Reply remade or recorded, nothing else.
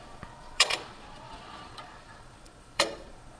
remade